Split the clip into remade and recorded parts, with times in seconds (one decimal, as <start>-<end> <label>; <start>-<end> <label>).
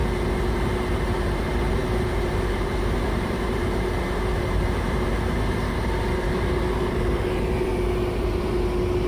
0.0-0.5 recorded; 0.5-7.7 remade; 7.7-9.1 recorded